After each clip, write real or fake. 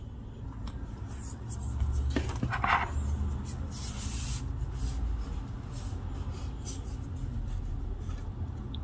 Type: real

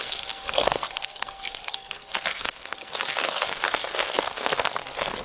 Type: fake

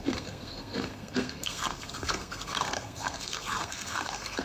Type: fake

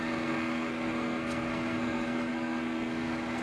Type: fake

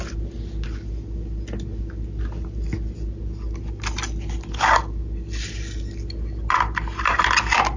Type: real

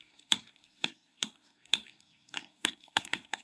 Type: fake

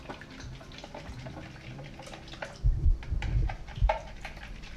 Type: real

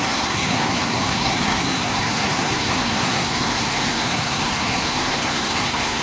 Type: fake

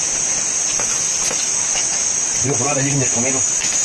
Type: real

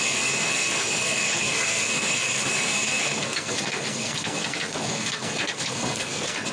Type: fake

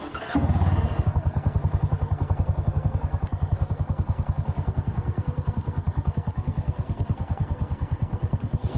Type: fake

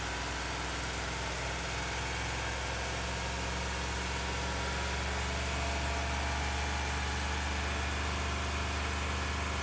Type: real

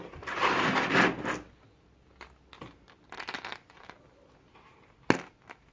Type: real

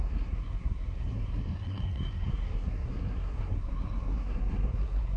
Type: fake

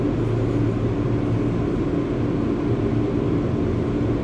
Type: real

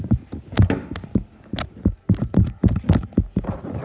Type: real